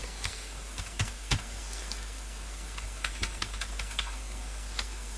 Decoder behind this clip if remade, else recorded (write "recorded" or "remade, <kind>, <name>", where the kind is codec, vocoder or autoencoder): remade, codec, SNAC